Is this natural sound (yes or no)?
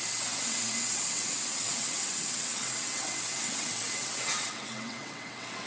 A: no